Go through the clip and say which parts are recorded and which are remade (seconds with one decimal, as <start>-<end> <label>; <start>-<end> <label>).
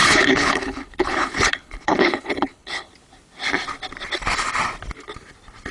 0.0-2.9 remade; 2.9-5.7 recorded